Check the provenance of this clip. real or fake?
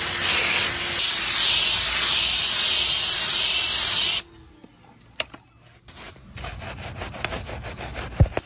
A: real